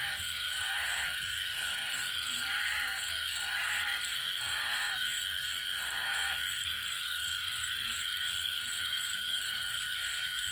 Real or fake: fake